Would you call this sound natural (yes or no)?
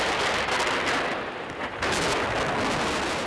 yes